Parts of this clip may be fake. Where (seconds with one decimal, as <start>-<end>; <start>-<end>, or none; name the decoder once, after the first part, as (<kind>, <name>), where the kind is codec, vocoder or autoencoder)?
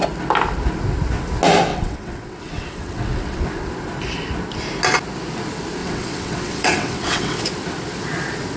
1.7-3.7 (vocoder, WaveNeXt); 5.8-7.4